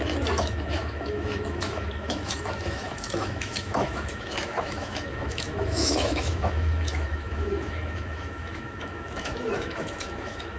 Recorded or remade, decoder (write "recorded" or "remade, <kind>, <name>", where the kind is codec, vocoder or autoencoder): remade, autoencoder, DAC-VAE